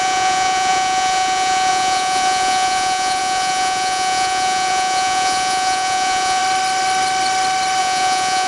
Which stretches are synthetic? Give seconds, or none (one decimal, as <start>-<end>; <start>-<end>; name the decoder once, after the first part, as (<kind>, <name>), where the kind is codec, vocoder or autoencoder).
0.0-6.4 (vocoder, Vocos); 7.8-8.5